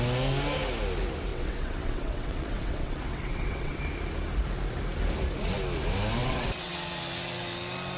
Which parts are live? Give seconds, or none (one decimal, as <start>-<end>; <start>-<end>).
0.0-1.3; 3.8-6.2; 6.7-8.0